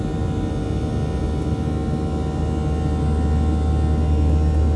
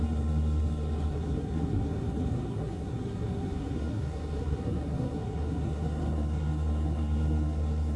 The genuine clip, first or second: first